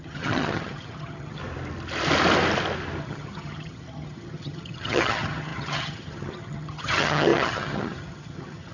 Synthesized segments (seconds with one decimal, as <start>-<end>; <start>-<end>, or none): 0.0-1.4; 3.0-8.7